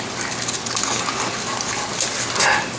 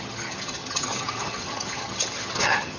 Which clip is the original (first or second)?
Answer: first